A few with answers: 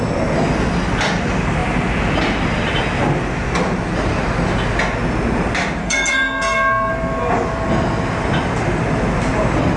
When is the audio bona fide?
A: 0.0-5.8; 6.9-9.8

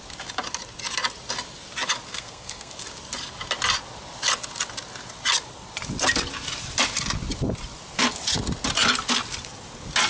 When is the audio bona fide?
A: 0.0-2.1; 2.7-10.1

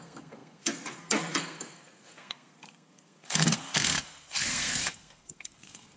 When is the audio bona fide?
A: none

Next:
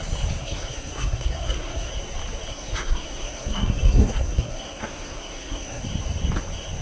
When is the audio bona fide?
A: 0.0-0.4; 1.9-2.5; 5.8-6.8

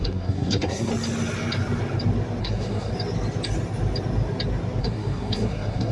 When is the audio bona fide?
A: 0.9-2.4; 2.9-4.8